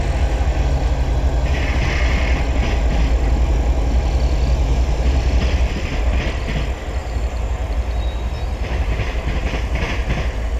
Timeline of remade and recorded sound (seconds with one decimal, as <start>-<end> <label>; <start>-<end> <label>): 0.0-4.7 recorded; 4.7-5.8 remade; 5.8-7.0 recorded; 7.0-10.0 remade; 10.0-10.6 recorded